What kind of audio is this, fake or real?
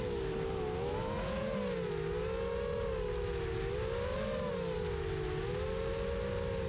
real